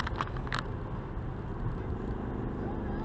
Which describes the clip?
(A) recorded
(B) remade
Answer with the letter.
A